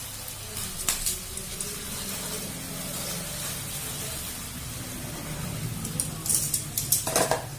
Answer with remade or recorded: recorded